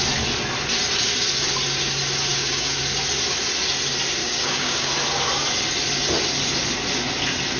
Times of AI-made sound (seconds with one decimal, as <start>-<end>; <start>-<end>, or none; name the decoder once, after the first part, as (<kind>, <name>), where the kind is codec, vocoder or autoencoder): 2.3-2.8 (codec, DAC); 4.2-4.9